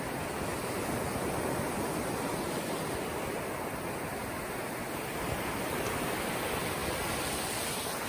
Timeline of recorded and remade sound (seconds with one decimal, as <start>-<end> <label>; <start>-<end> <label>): 0.0-8.1 recorded